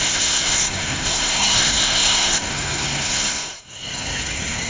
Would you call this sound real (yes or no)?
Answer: no